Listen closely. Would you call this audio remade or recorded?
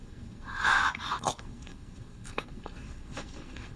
remade